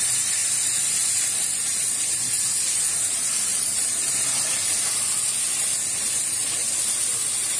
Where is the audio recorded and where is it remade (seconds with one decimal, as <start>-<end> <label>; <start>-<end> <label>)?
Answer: 0.0-7.6 recorded